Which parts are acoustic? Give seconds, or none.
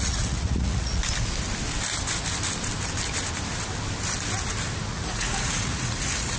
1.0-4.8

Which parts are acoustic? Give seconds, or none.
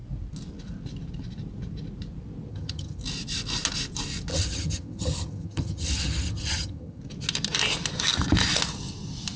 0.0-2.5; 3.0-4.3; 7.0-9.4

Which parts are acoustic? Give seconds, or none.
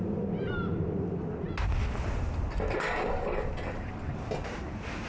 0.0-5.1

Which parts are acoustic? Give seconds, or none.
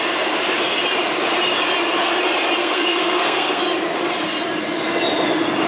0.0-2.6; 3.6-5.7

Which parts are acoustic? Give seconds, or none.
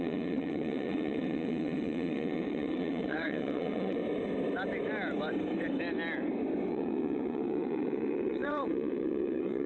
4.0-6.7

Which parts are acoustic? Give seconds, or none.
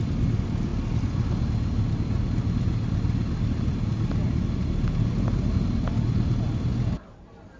0.0-7.6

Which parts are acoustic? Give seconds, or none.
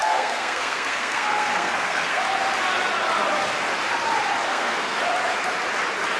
2.2-4.5; 5.0-6.2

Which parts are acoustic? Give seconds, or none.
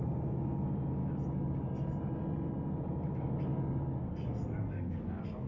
0.0-1.0; 2.0-3.5